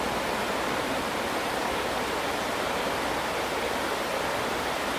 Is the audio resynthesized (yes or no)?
no